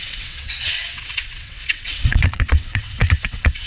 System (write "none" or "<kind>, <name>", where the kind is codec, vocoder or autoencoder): vocoder, WaveNeXt